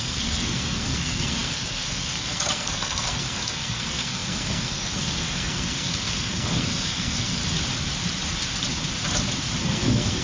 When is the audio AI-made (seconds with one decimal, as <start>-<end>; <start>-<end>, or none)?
0.0-7.4; 9.6-10.2